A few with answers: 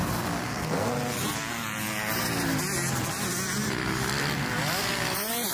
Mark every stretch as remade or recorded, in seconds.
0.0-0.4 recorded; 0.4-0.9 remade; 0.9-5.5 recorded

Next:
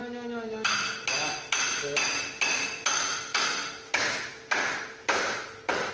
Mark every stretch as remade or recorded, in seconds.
0.0-5.9 recorded

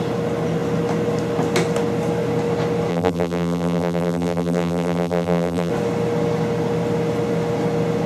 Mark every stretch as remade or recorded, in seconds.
0.0-2.9 recorded; 2.9-5.7 remade; 5.7-8.1 recorded

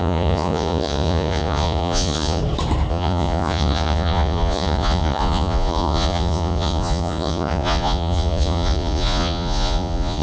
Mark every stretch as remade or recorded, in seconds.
0.0-2.4 remade; 2.4-2.9 recorded; 2.9-10.2 remade

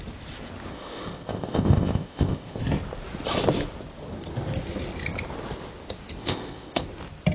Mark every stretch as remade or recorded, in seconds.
0.0-0.7 recorded; 0.7-2.6 remade; 2.6-6.2 recorded; 6.2-6.8 remade; 6.8-7.3 recorded